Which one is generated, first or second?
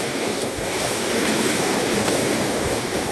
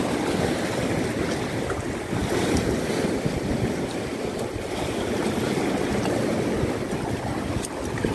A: first